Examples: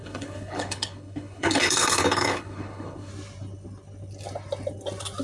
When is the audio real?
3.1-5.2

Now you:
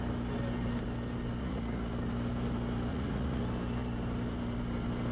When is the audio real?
0.0-1.4; 1.9-2.9; 3.4-5.1

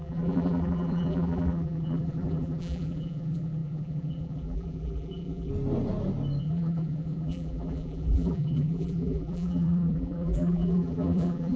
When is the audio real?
5.5-6.4

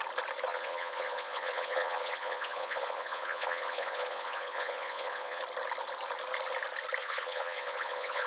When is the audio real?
0.0-0.5; 5.4-7.0

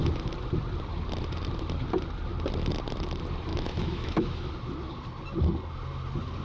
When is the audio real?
0.0-3.5; 4.5-6.4

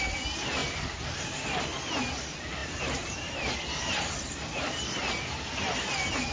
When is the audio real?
0.0-6.3